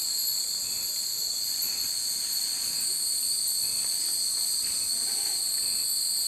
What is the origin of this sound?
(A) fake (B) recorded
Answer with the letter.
B